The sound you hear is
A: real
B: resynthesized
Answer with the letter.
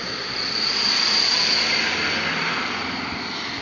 A